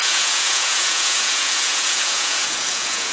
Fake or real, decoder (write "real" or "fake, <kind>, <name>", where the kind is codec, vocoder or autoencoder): fake, vocoder, Vocos